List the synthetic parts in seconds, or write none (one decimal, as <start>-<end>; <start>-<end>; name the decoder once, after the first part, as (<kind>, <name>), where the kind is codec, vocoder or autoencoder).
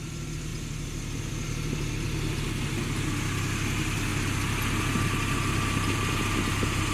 none